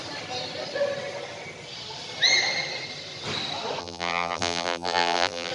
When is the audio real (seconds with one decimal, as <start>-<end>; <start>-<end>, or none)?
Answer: 0.0-3.8